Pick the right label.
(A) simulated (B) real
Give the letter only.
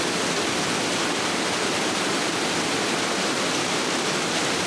B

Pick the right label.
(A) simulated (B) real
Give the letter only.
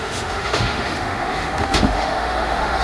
A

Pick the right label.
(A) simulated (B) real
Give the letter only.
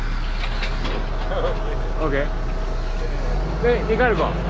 B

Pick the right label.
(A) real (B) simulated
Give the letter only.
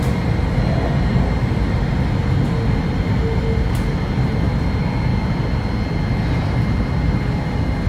A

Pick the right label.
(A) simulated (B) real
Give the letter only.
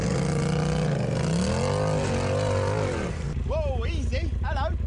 B